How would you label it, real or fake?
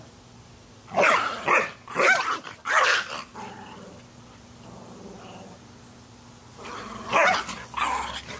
real